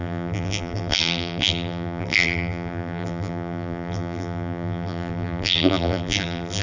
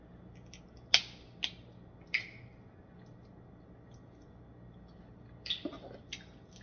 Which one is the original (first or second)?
second